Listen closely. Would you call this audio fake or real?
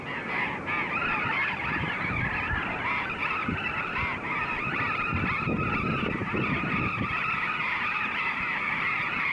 fake